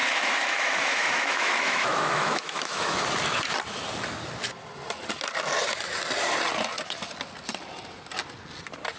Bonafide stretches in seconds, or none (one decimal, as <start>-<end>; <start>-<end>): 3.0-9.0